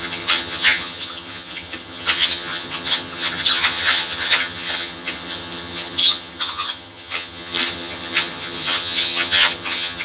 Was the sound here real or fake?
fake